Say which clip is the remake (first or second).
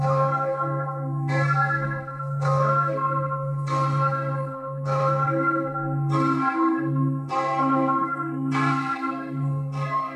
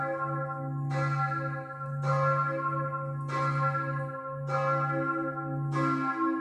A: first